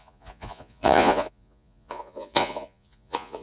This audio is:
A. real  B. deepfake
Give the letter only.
B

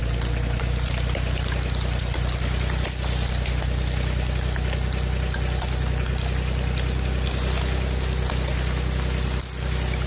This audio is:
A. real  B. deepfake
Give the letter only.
A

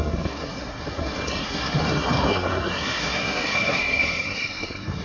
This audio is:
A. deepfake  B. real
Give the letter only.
A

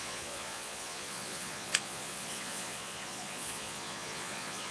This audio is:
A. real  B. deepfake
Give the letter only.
B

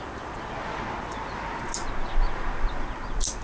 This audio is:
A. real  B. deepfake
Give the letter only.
A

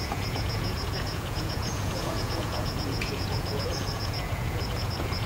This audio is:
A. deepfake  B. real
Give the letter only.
A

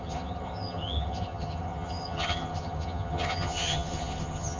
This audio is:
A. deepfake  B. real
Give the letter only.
A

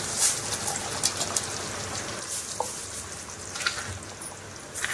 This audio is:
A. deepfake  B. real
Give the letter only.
B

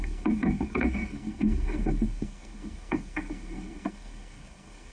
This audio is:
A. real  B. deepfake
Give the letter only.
B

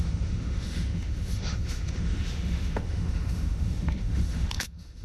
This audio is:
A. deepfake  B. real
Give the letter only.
A